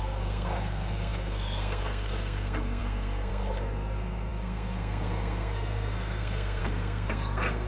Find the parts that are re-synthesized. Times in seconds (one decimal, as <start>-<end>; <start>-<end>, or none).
0.0-7.7